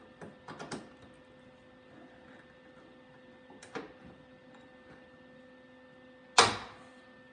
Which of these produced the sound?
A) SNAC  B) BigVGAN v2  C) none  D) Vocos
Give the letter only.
C